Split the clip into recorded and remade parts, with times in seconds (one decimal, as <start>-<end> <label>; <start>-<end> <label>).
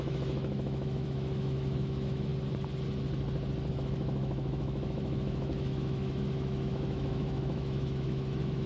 0.0-2.3 remade; 2.3-3.7 recorded; 3.7-8.7 remade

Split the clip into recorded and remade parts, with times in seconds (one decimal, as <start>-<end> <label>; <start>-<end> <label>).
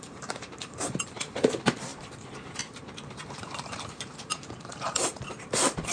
0.0-5.9 remade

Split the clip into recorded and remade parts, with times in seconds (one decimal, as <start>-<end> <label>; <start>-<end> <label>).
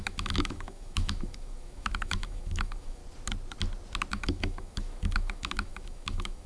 0.0-3.0 remade; 3.0-4.1 recorded; 4.1-6.5 remade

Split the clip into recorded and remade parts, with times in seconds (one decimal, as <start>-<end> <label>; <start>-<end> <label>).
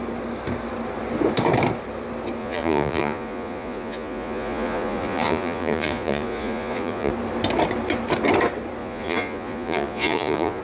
0.0-2.4 recorded; 2.4-7.1 remade; 7.1-8.8 recorded; 8.8-10.6 remade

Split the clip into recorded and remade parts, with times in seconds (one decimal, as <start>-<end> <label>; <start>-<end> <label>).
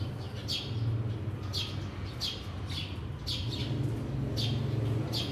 0.0-5.3 recorded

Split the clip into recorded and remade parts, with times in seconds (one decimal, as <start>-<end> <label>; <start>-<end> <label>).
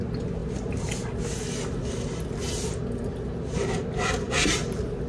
0.0-5.1 recorded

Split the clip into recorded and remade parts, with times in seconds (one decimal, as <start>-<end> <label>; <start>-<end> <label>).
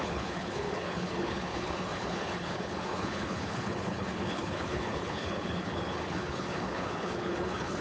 0.0-7.8 remade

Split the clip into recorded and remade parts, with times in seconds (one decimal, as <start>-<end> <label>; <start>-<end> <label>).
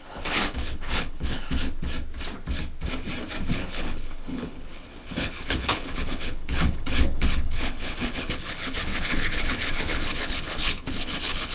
0.0-1.7 remade; 1.7-3.5 recorded; 3.5-11.5 remade